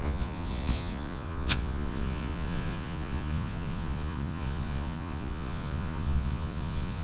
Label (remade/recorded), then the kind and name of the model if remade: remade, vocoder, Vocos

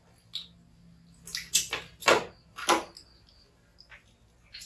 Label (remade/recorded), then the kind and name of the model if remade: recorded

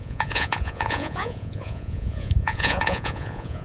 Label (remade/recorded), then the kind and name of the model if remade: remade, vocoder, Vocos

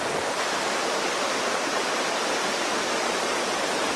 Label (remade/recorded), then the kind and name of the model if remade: recorded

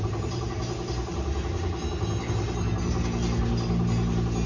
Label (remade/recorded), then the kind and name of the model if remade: recorded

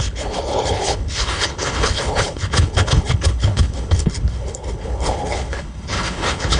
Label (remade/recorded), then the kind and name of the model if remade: remade, codec, HILCodec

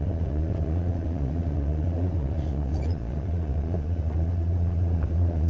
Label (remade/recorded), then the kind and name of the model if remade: remade, vocoder, Vocos